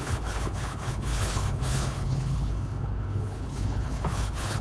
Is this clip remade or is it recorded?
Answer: remade